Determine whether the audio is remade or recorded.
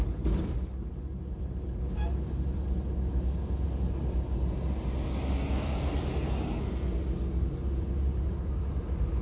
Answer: recorded